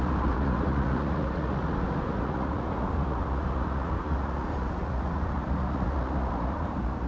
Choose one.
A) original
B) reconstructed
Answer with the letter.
B